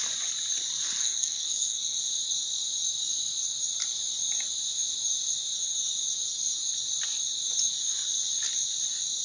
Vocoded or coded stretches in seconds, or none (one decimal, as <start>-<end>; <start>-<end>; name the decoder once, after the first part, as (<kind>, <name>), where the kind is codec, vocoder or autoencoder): 1.0-2.0 (codec, SNAC)